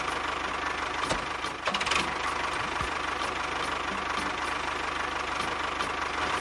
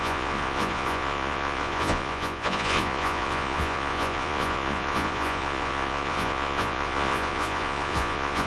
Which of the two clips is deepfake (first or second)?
second